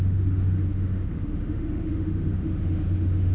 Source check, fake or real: fake